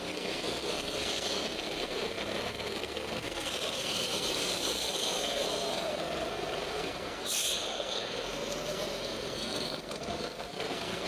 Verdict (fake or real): fake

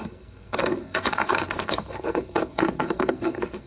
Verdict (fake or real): fake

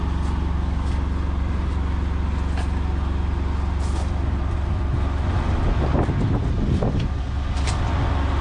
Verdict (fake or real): real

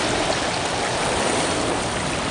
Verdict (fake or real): real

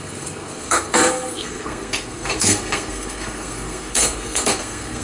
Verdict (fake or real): fake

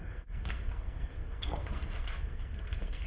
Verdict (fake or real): fake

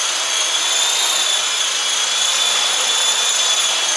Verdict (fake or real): real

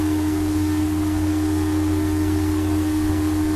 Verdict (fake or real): fake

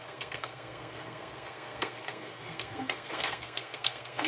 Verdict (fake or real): fake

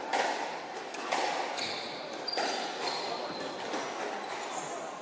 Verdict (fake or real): real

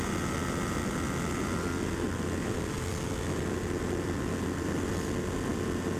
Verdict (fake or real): real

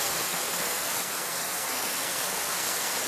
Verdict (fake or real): fake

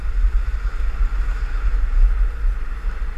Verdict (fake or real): real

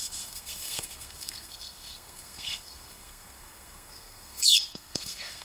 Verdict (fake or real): fake